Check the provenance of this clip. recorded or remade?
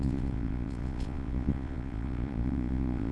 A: remade